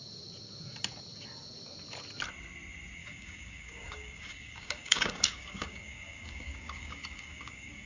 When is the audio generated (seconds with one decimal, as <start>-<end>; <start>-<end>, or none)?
3.0-7.9